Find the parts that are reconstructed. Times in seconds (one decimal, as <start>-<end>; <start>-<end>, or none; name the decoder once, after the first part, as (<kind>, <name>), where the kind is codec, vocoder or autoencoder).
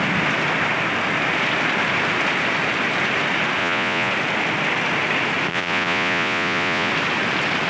3.6-4.1 (vocoder, Vocos); 5.5-6.9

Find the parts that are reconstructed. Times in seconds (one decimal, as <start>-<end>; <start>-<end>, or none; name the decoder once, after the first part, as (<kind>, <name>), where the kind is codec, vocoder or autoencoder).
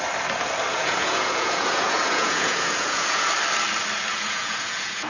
0.7-3.3 (vocoder, Vocos); 4.1-5.1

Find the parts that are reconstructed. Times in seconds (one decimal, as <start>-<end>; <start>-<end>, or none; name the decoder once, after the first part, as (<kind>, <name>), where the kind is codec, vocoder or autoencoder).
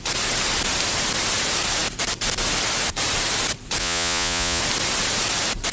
3.8-4.6 (vocoder, Vocos)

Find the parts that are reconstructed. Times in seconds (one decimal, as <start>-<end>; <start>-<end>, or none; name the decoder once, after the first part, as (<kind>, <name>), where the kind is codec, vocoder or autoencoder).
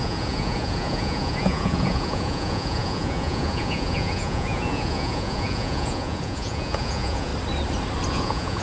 0.0-7.3 (vocoder, Vocos); 8.1-8.6